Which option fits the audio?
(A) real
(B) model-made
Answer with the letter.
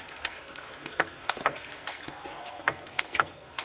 B